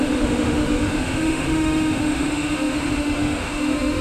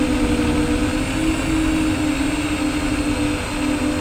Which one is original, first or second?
second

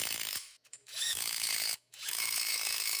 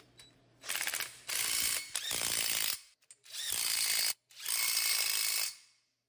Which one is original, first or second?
second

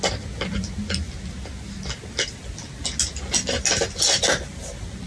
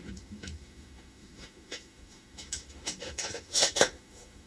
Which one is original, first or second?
first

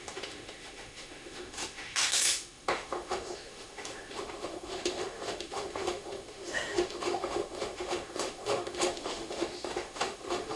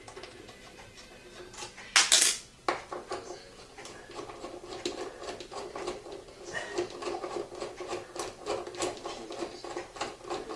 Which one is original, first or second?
second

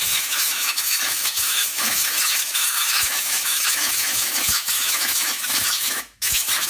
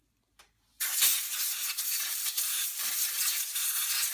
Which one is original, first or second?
second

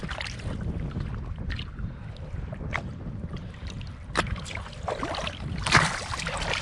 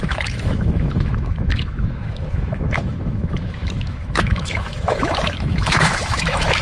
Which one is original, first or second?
first